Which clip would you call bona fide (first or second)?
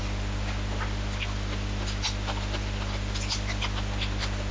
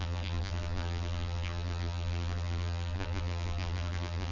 first